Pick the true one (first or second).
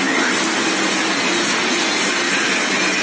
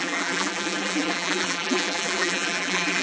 first